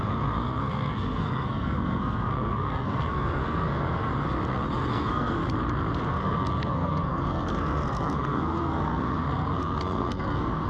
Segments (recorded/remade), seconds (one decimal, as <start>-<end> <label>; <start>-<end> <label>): 0.0-4.1 remade; 4.1-4.9 recorded; 4.9-5.4 remade; 5.4-6.0 recorded; 6.0-10.7 remade